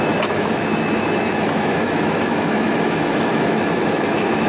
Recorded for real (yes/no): no